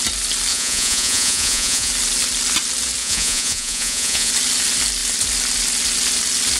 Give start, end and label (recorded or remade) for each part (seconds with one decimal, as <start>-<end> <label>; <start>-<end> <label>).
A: 0.0-0.5 recorded; 0.5-1.9 remade; 1.9-3.0 recorded; 3.0-4.3 remade; 4.3-6.6 recorded